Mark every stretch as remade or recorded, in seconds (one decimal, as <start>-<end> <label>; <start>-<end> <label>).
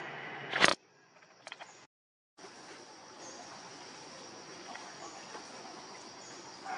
0.0-6.8 remade